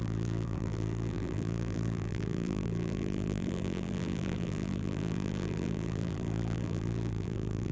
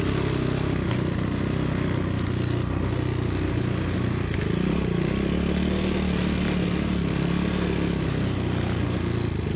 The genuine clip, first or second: second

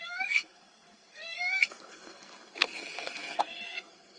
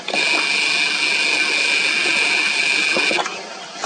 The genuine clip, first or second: second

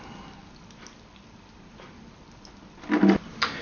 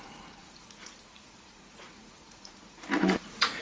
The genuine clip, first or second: first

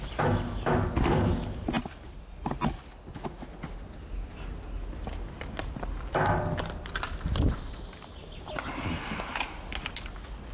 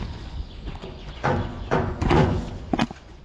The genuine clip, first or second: first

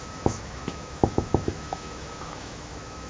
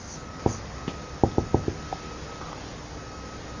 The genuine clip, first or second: second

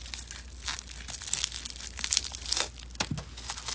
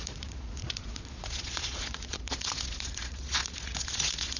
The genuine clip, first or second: first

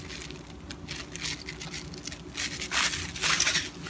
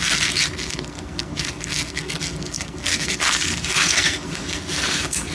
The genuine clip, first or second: first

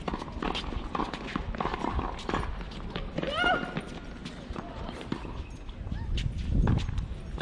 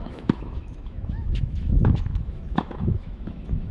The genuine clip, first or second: first